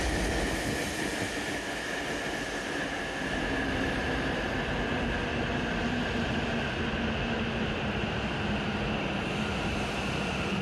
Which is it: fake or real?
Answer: real